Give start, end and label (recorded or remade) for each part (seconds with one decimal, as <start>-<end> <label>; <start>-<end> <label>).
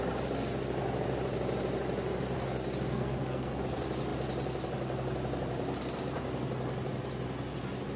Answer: 0.0-2.9 recorded; 2.9-3.6 remade; 3.6-8.0 recorded